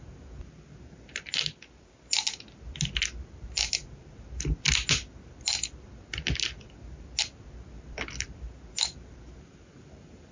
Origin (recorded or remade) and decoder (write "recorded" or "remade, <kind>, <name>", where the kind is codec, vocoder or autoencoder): recorded